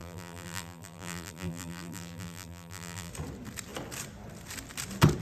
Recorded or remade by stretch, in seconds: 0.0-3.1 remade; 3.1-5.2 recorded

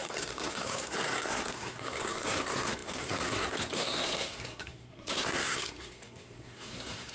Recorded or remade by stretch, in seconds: 0.0-7.1 remade

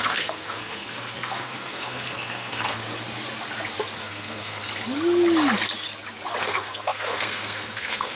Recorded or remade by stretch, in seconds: 0.0-2.8 remade; 2.8-4.0 recorded; 4.0-4.7 remade; 4.7-6.4 recorded; 6.4-8.2 remade

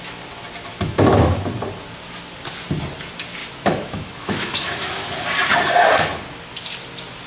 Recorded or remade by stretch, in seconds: 0.0-0.7 recorded; 0.7-1.4 remade; 1.4-3.4 recorded; 3.4-5.1 remade; 5.1-7.3 recorded

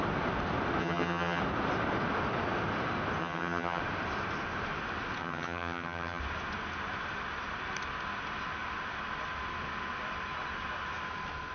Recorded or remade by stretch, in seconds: 0.0-0.8 recorded; 0.8-1.4 remade; 1.4-3.2 recorded; 3.2-3.8 remade; 3.8-5.2 recorded; 5.2-6.2 remade; 6.2-11.5 recorded